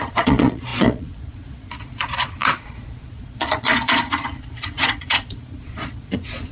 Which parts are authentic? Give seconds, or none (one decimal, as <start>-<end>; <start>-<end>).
none